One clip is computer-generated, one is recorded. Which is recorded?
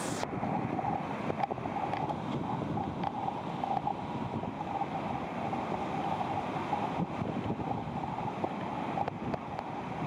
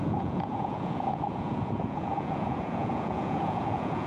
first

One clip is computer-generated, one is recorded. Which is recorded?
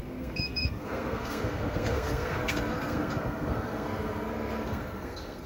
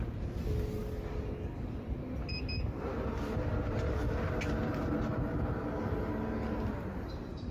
second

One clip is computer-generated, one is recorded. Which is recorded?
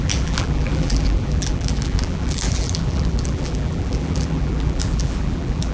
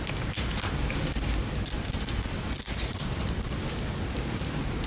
second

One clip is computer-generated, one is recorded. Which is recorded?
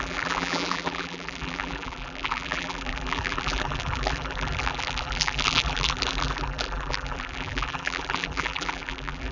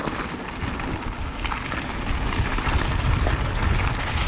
second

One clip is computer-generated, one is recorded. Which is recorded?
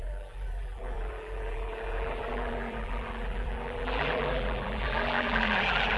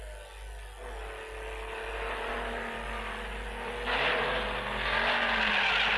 second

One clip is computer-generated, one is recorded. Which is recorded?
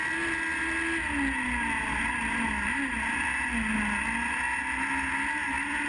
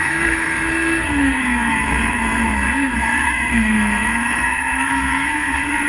first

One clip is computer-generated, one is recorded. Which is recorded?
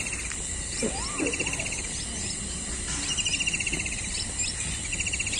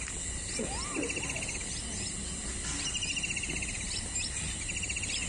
second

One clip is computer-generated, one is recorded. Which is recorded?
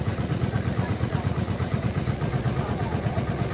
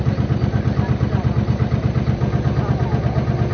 second